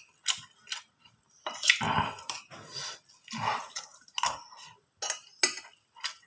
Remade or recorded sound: recorded